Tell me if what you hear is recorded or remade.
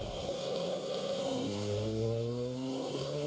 remade